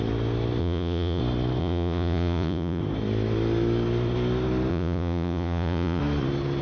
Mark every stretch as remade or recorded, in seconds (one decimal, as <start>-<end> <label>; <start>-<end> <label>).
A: 0.0-0.6 recorded; 0.6-1.2 remade; 1.2-1.6 recorded; 1.6-2.8 remade; 2.8-4.7 recorded; 4.7-6.0 remade; 6.0-6.6 recorded